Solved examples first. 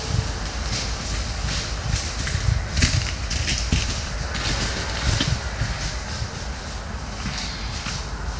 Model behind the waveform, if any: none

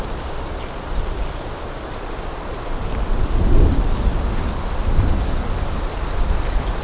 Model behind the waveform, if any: none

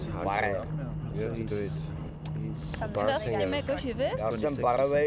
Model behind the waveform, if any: none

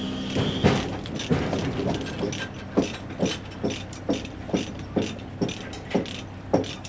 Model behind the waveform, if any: none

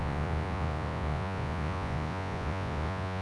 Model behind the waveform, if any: vocoder, Vocos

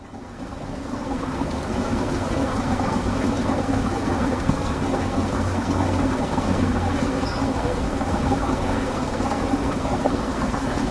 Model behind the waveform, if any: codec, SNAC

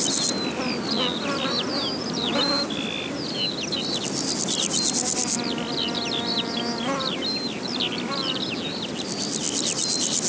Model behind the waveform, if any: none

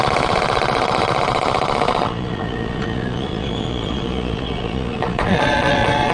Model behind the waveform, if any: vocoder, Vocos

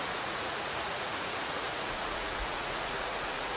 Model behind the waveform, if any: vocoder, Vocos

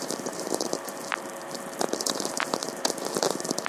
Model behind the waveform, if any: vocoder, BigVGAN v2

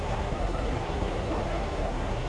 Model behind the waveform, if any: codec, SNAC